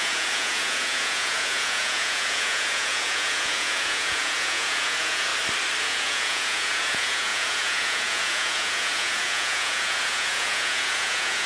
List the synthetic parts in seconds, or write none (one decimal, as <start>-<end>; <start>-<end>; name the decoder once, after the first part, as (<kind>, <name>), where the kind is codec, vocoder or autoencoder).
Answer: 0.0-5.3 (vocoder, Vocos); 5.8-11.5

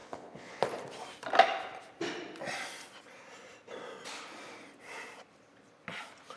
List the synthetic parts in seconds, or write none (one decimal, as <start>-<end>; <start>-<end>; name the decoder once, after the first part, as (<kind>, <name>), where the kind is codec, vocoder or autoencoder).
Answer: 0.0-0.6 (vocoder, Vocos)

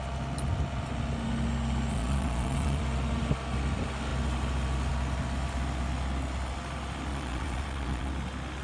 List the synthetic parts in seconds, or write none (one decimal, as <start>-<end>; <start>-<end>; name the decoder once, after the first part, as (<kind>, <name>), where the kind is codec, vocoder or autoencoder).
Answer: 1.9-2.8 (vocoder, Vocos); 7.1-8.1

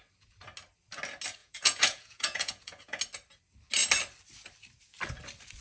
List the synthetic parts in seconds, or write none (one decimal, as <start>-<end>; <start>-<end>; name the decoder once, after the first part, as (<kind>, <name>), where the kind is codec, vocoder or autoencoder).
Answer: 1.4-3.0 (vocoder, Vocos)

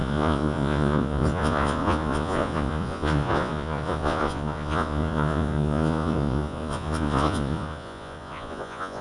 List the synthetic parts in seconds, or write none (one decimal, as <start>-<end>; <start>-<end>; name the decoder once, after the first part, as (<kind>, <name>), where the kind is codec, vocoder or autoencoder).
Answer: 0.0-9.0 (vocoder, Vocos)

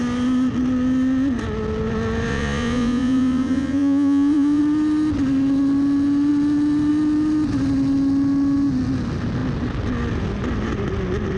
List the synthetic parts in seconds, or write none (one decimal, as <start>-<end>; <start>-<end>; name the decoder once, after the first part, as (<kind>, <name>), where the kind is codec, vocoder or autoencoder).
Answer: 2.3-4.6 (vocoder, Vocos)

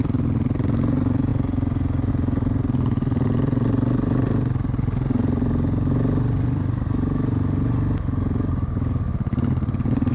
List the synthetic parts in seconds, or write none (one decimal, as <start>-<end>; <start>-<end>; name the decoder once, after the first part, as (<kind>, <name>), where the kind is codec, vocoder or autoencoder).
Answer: none

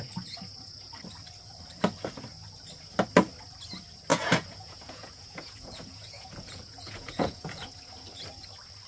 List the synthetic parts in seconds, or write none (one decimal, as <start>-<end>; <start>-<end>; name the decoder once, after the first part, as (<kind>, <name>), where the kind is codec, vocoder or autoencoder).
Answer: 4.1-7.7 (vocoder, Vocos)